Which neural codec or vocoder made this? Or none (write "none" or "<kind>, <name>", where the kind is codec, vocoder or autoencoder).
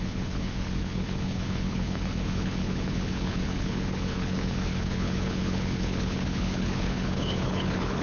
codec, HILCodec